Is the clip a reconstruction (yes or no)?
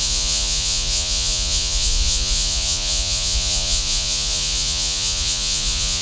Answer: yes